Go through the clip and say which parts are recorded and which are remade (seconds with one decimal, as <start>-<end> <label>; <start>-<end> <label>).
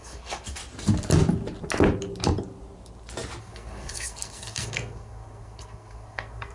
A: 0.0-0.6 remade; 0.6-3.4 recorded; 3.4-6.5 remade